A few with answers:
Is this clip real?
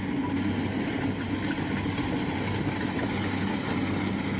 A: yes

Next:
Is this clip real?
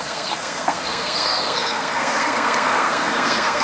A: no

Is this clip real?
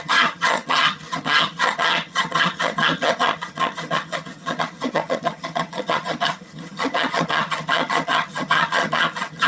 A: no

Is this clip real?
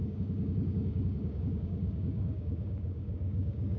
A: no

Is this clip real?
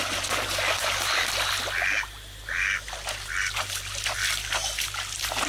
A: yes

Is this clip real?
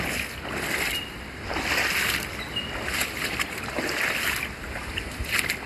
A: yes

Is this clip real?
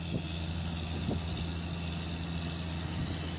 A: yes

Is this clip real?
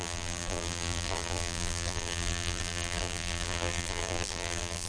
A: no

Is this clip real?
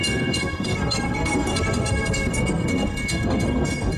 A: no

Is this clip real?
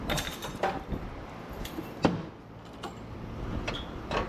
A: yes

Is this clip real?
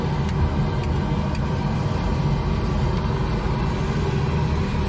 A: yes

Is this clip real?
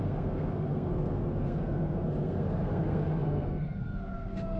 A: no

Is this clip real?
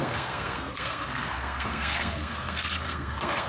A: no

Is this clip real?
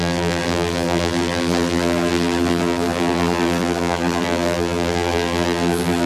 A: no